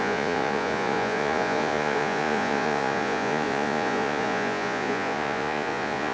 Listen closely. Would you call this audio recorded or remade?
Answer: remade